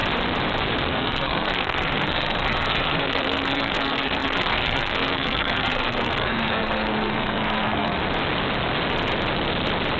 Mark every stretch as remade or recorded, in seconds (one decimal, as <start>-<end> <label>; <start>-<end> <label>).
0.0-0.9 recorded; 0.9-8.0 remade; 8.0-10.0 recorded